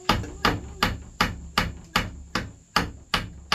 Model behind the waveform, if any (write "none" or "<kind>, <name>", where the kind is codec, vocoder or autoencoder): none